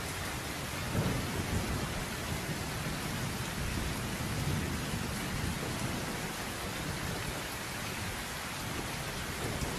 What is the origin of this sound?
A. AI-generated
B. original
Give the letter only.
B